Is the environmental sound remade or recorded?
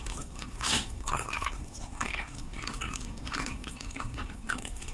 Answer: remade